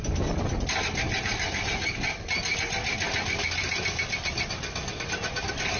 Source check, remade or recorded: recorded